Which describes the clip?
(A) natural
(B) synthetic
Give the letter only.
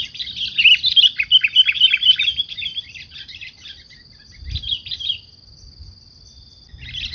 A